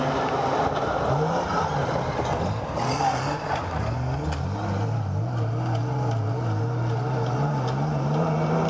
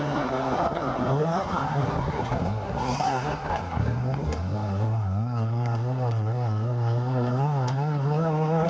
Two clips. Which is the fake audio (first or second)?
second